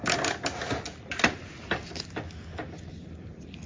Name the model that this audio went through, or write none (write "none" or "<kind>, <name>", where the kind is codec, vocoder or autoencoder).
none